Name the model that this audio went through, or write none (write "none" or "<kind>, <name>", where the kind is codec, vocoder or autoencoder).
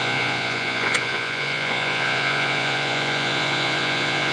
vocoder, Vocos